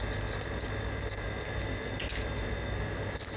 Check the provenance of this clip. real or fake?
real